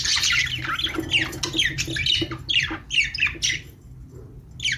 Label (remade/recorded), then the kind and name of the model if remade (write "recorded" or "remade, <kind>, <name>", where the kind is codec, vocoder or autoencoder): recorded